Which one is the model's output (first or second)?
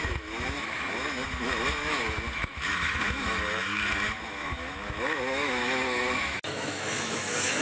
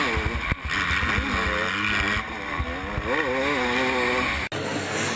first